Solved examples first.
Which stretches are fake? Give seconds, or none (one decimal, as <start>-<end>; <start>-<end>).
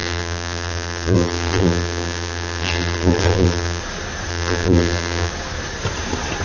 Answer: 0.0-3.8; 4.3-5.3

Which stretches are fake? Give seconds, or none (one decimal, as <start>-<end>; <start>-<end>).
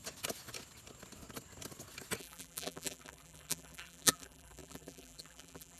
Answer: 2.2-5.8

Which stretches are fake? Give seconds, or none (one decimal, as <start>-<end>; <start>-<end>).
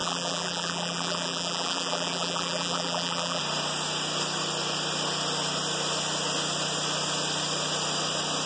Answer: 0.0-3.4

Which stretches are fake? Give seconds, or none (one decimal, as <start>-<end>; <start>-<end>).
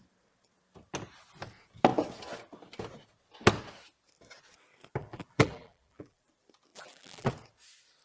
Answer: 5.0-6.3; 6.7-7.3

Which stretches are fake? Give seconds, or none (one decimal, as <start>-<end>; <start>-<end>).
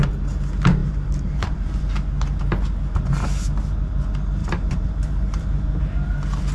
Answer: 0.8-1.9; 4.4-5.8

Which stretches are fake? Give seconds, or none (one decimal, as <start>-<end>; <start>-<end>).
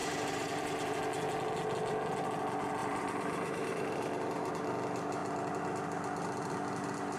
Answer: 0.0-1.0; 2.8-4.5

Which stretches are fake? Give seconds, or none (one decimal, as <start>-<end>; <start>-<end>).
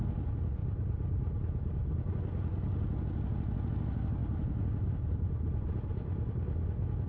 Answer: 0.6-2.1; 4.2-6.3